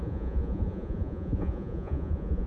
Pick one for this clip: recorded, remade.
remade